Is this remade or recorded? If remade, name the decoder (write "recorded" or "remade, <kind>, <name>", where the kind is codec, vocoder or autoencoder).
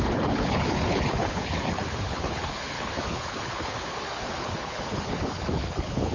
remade, codec, HILCodec